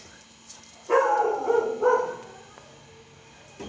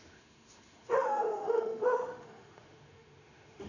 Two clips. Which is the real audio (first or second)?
first